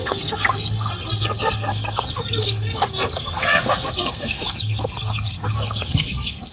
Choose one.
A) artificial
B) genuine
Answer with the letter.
A